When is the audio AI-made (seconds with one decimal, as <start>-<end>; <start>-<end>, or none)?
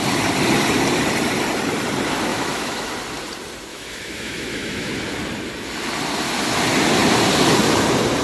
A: 2.3-2.9; 3.7-4.9